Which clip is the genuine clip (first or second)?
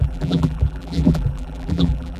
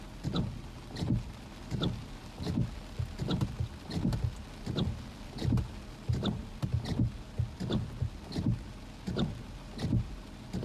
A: second